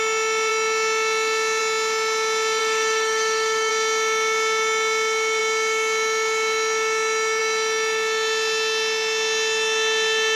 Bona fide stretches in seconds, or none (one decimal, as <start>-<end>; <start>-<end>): 0.0-2.6; 3.7-10.4